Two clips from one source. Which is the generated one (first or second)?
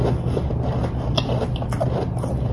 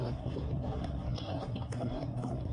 second